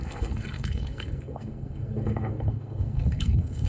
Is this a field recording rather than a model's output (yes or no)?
no